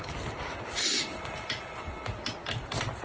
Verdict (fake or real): real